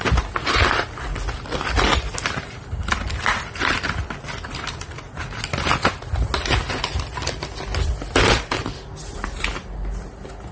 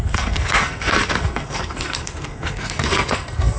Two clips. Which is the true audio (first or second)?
first